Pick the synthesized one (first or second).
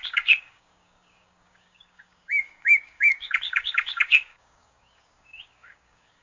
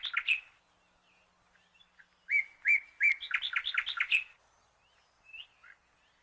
first